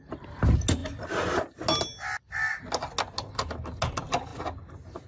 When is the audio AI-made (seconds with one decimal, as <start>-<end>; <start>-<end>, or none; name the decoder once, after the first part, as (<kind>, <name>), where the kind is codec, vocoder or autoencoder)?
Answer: none